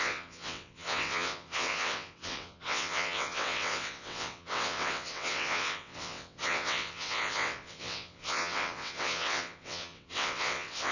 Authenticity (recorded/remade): remade